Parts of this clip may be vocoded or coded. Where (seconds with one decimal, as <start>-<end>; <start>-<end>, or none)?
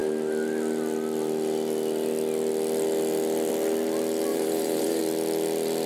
4.3-5.0